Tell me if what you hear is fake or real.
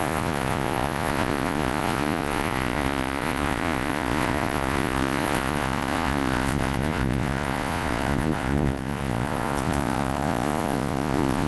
fake